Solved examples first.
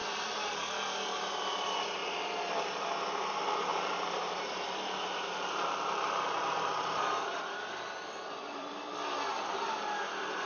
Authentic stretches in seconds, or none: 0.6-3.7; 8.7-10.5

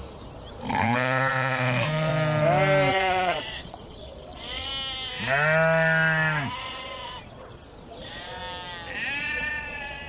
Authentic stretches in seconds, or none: 0.0-0.7; 2.1-2.9; 4.7-6.6; 8.4-9.2

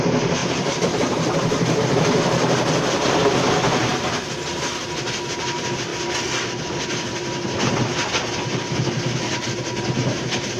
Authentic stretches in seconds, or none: 0.0-10.6

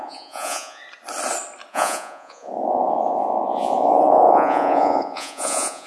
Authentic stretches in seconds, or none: 0.8-1.7